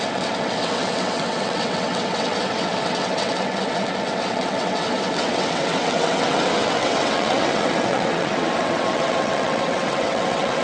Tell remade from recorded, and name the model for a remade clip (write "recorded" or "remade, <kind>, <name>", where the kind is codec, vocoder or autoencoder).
remade, vocoder, WaveNeXt